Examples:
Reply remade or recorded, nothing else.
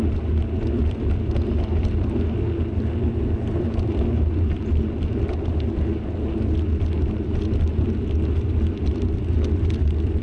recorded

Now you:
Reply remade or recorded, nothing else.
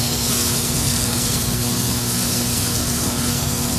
remade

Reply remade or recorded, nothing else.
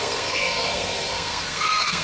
remade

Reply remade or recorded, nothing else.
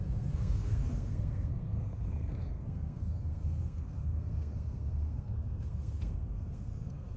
remade